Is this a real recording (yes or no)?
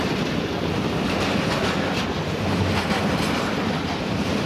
yes